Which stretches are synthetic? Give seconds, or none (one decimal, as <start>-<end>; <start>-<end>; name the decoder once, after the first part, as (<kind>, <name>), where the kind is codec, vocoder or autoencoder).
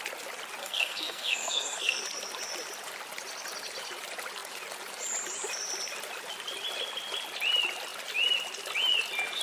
0.6-2.0 (codec, SNAC)